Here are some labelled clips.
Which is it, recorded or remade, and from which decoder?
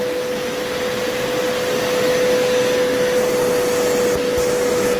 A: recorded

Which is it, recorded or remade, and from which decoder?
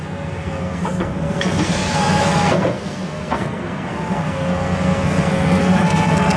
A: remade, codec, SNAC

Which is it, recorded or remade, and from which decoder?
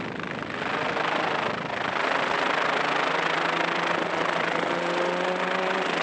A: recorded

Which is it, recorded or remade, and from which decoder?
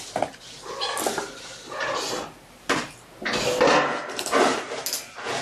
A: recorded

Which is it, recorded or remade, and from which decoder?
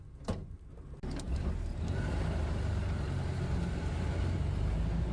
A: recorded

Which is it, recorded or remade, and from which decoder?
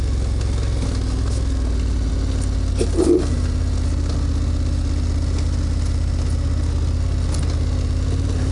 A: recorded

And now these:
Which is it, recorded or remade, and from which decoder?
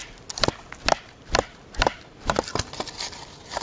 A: recorded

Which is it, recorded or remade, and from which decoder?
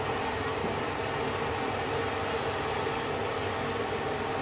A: recorded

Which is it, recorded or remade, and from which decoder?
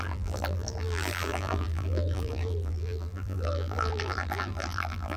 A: remade, vocoder, BigVGAN v2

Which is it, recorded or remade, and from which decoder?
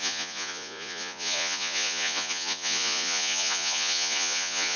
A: remade, vocoder, Vocos